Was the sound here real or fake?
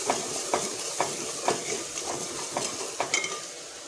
real